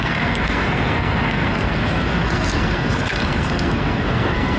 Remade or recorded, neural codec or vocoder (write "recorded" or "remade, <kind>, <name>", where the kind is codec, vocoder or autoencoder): remade, codec, SNAC